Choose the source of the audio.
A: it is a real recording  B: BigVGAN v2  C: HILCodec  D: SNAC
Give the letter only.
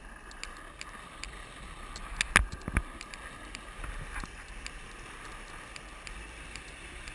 A